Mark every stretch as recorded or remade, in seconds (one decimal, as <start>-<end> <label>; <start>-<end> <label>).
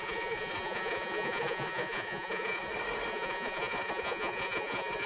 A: 0.0-2.7 remade; 2.7-3.1 recorded; 3.1-5.1 remade